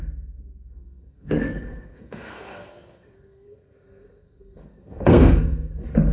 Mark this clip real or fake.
fake